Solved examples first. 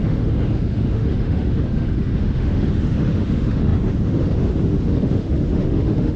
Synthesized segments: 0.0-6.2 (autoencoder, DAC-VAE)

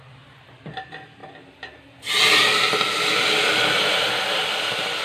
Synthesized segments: none